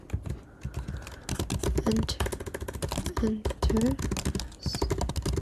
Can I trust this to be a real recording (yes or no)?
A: yes